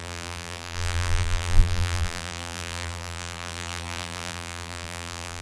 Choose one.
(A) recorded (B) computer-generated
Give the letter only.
B